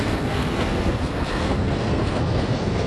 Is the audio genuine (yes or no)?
no